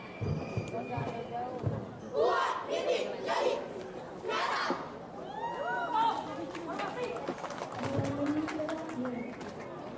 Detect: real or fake real